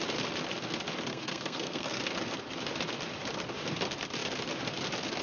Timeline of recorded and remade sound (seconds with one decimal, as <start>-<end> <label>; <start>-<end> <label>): 0.0-1.1 recorded; 1.1-2.0 remade; 2.0-5.2 recorded